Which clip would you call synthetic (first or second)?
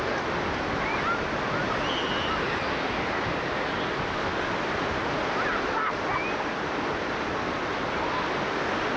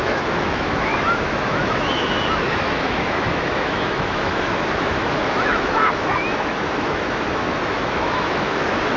second